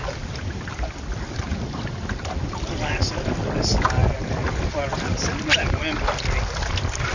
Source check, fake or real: real